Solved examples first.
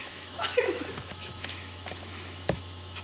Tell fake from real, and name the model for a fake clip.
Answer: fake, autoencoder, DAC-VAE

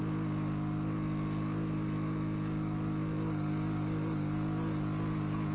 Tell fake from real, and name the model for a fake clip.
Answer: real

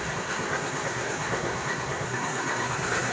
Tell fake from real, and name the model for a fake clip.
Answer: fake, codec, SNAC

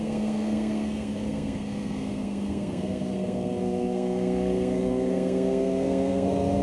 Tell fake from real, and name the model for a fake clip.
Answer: fake, codec, SNAC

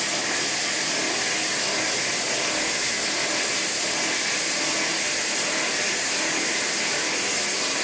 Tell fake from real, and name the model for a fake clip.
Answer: real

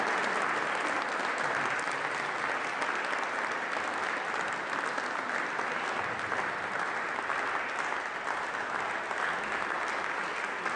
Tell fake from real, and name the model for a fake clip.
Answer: real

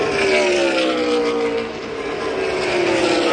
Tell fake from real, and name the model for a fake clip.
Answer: real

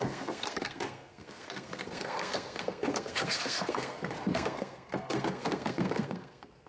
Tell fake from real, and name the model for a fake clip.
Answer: fake, codec, SNAC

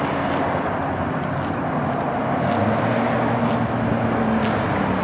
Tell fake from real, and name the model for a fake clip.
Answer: real